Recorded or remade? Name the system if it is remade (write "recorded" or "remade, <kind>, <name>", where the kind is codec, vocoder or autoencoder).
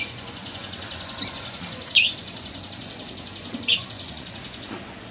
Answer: remade, vocoder, Vocos